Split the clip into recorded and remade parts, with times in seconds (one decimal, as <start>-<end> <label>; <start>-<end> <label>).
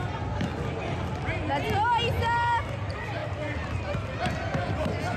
0.0-5.2 recorded